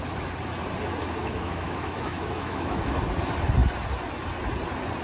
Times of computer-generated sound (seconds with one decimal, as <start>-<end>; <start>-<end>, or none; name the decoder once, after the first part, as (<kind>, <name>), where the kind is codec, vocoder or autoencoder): 1.2-2.9 (autoencoder, DAC-VAE)